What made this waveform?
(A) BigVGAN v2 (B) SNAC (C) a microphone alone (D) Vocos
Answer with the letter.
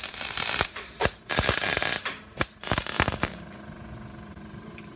A